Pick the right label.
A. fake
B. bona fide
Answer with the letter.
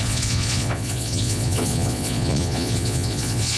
A